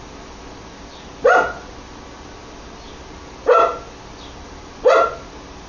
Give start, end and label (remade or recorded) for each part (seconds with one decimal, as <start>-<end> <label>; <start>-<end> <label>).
0.0-5.7 recorded